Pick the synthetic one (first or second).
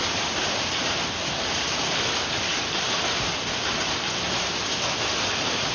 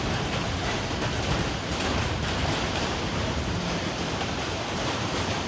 second